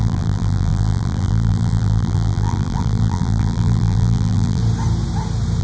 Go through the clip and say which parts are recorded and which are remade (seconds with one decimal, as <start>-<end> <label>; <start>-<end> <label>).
0.0-4.6 remade; 4.6-5.6 recorded